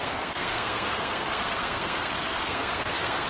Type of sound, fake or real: fake